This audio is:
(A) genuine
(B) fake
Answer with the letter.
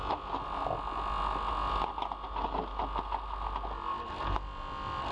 A